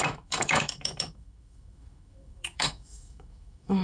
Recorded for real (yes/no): no